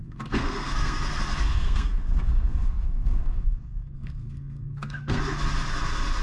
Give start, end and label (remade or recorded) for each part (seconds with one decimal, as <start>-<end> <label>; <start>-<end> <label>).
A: 0.0-1.0 remade; 1.0-1.5 recorded; 1.5-5.2 remade; 5.2-6.2 recorded